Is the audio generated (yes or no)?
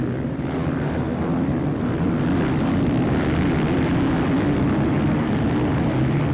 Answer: no